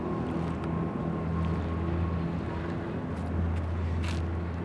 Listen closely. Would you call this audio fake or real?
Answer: real